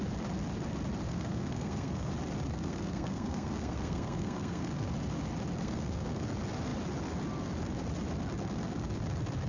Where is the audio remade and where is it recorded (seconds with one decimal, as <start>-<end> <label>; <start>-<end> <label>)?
0.0-1.1 recorded; 1.1-2.1 remade; 2.1-2.5 recorded; 2.5-4.9 remade; 4.9-5.6 recorded; 5.6-6.2 remade; 6.2-9.5 recorded